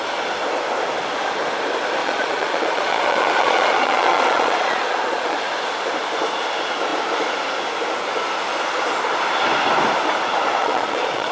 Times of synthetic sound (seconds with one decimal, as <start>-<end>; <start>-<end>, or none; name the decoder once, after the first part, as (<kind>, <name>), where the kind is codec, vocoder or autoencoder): 2.0-5.4 (vocoder, Vocos); 10.6-11.3